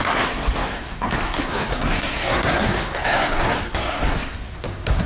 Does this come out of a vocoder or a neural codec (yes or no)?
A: yes